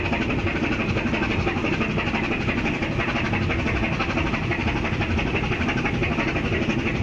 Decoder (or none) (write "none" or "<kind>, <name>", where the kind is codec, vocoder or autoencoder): none